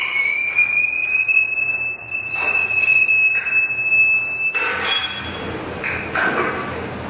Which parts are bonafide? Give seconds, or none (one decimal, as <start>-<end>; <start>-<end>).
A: 0.0-0.4; 1.4-2.0; 3.1-7.1